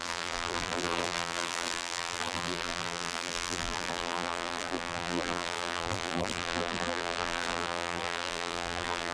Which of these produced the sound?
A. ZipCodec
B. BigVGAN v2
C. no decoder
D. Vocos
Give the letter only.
B